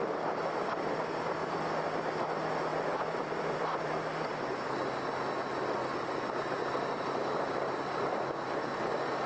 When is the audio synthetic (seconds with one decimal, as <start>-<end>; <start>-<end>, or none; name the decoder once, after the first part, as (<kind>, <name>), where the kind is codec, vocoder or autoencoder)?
2.7-4.0 (vocoder, BigVGAN v2)